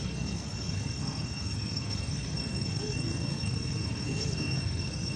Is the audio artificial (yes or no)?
yes